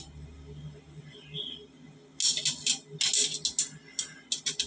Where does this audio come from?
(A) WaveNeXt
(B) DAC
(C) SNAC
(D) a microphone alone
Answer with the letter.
D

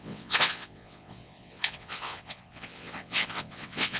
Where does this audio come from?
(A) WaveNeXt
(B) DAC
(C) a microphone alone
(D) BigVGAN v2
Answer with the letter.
A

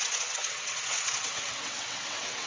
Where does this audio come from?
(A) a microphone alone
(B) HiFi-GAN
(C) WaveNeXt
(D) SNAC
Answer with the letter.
C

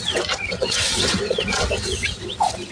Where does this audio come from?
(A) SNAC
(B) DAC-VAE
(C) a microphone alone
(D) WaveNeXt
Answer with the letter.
D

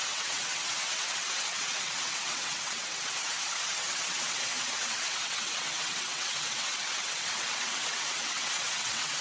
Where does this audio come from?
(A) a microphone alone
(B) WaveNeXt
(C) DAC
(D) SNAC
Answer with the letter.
B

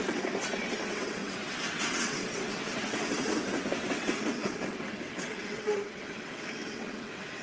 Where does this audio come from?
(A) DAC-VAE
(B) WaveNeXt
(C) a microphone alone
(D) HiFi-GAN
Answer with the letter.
B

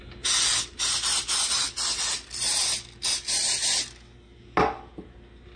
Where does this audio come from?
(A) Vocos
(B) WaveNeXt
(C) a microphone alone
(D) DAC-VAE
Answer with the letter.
C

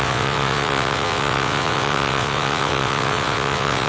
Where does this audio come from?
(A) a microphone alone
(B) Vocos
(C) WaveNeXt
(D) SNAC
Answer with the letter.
C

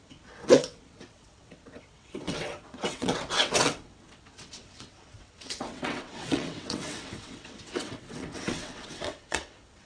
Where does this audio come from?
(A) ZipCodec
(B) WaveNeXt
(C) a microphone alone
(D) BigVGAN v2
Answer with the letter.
B